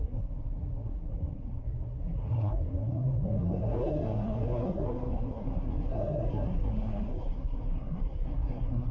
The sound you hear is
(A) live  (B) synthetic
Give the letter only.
B